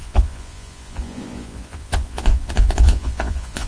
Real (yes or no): no